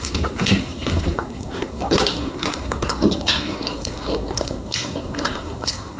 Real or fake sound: fake